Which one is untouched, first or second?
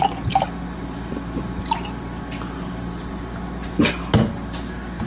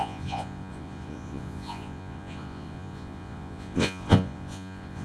first